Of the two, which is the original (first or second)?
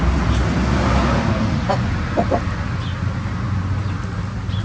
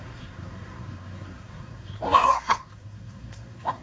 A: first